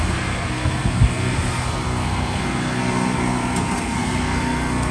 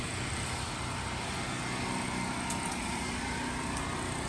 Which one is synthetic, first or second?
first